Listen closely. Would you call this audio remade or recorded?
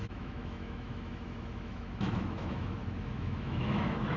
remade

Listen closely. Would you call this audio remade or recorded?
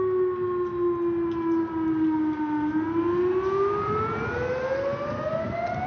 recorded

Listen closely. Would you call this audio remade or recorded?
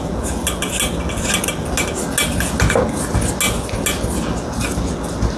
recorded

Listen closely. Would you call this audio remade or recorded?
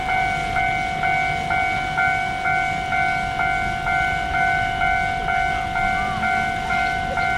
recorded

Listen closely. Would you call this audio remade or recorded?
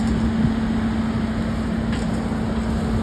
recorded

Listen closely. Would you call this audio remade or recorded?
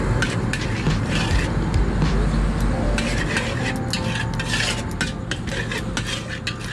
recorded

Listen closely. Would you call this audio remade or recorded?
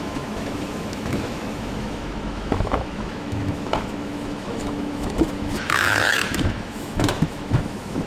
remade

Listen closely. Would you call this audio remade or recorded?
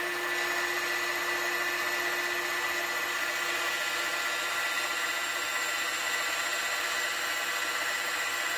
recorded